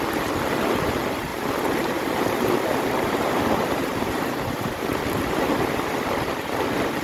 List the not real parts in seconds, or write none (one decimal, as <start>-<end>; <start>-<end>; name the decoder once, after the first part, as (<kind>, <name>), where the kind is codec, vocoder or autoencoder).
1.3-5.5 (vocoder, BigVGAN v2)